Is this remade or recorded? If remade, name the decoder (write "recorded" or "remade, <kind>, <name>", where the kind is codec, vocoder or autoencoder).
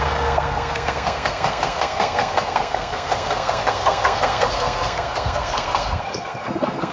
remade, codec, SNAC